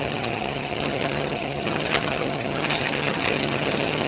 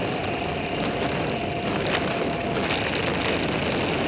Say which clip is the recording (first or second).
second